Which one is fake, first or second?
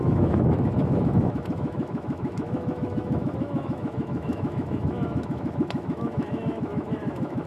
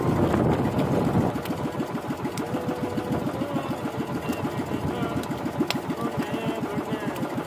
first